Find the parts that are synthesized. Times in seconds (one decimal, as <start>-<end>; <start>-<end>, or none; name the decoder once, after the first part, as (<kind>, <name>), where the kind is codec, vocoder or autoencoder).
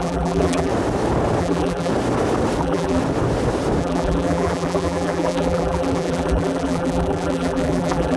0.0-0.7 (vocoder, BigVGAN v2); 1.4-1.9; 2.6-3.0; 3.8-8.2